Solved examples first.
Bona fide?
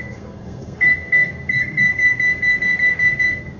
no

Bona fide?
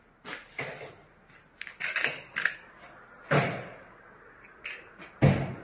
yes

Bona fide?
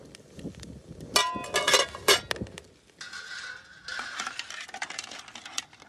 yes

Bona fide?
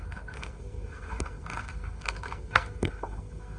no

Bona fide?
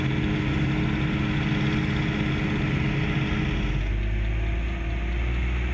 yes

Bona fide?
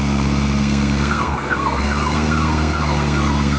no